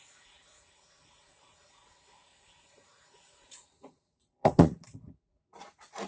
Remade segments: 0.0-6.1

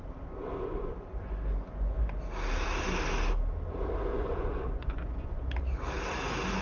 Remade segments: 0.8-2.2; 4.1-5.4

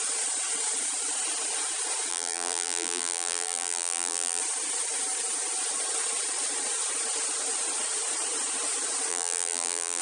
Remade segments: 2.1-4.4; 9.1-10.0

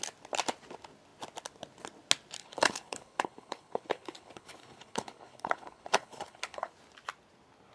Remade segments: 2.4-6.7

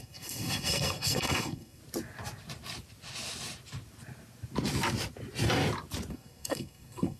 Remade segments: 0.0-1.8; 6.1-7.2

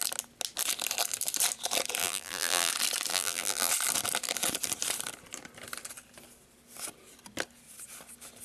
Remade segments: 2.0-2.7; 3.1-3.7

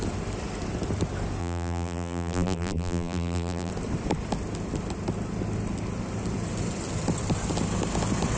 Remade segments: 1.4-3.7

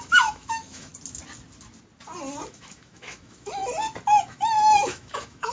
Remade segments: 0.0-0.9; 2.5-3.6; 4.2-5.5